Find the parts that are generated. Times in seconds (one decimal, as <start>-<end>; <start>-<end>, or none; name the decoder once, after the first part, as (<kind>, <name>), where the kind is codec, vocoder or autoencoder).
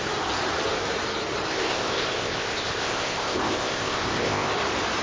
1.5-4.5 (codec, ZipCodec)